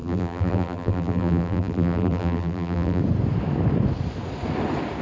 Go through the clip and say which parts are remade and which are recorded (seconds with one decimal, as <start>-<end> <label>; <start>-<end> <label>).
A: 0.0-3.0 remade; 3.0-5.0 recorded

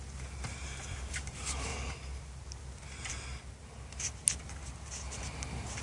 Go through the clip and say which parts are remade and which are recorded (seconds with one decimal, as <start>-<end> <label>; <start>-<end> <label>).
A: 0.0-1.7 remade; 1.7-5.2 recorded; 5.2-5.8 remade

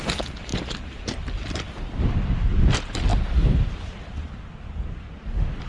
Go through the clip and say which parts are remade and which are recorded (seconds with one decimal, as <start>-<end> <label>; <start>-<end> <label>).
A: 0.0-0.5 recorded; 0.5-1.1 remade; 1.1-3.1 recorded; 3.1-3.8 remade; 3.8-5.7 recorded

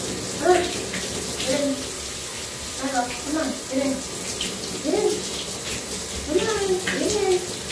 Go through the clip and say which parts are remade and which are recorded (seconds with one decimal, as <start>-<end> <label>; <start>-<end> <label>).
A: 0.0-7.7 recorded

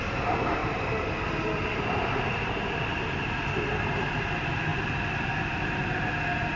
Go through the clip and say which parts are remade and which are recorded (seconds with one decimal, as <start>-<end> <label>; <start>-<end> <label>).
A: 0.0-0.6 recorded; 0.6-4.3 remade; 4.3-4.7 recorded; 4.7-6.1 remade; 6.1-6.6 recorded

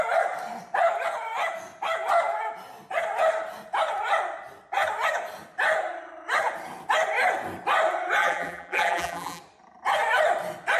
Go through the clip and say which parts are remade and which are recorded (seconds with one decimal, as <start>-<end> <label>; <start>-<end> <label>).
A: 0.0-8.2 recorded; 8.2-9.4 remade; 9.4-10.8 recorded

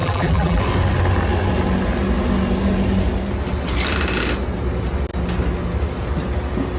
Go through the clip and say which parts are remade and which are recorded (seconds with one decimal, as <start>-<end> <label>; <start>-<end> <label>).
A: 0.0-0.6 remade; 0.6-6.8 recorded